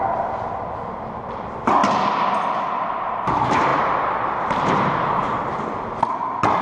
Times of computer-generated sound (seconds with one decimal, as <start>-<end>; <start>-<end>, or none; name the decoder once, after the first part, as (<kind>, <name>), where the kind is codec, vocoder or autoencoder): 0.0-1.8 (vocoder, BigVGAN v2); 2.7-3.7; 4.4-5.2